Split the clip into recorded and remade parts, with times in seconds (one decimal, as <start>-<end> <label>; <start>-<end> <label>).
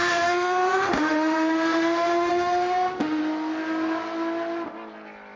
0.0-3.2 remade; 3.2-5.4 recorded